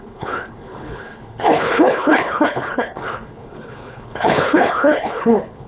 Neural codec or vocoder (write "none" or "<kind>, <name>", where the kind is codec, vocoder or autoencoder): codec, HILCodec